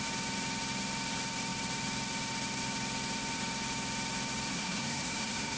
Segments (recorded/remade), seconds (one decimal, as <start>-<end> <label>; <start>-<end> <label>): 0.0-4.5 recorded; 4.5-5.6 remade